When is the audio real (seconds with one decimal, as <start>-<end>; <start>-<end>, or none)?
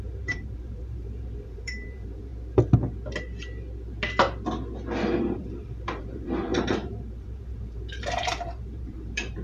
2.3-5.2